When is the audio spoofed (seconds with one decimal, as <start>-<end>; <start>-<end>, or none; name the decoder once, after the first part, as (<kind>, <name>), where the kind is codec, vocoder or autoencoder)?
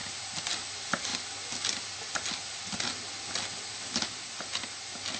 none